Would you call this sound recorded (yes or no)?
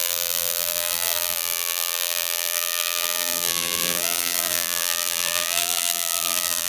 no